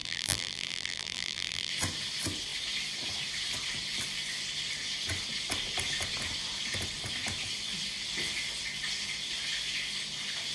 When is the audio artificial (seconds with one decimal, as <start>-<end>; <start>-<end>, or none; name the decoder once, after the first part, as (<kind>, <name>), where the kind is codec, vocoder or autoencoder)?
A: 0.0-1.7 (vocoder, BigVGAN v2)